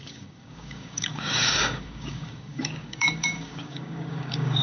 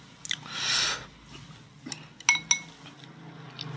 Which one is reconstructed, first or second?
first